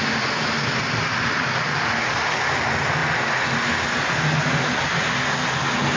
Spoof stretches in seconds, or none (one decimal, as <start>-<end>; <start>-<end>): none